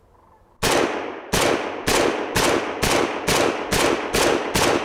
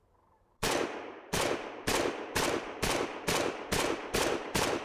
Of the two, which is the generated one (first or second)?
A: second